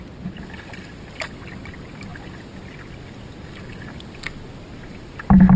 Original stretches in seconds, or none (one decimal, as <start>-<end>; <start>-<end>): 0.0-5.6